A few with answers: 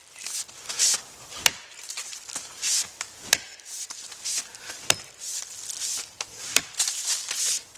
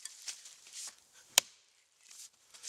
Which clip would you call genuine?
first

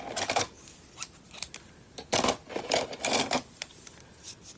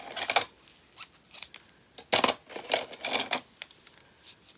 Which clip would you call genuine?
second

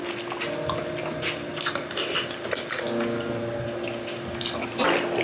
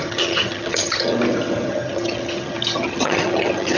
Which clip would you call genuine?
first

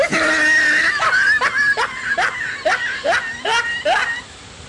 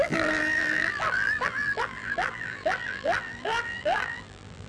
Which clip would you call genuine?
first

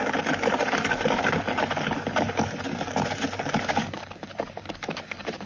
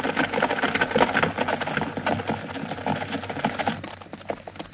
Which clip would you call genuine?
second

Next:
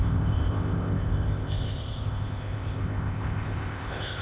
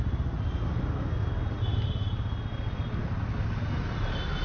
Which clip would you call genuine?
second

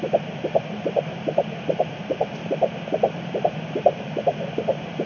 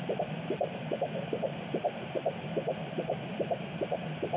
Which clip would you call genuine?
first